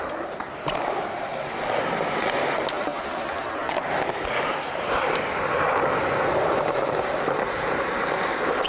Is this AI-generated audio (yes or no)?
no